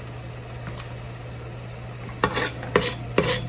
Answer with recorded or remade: recorded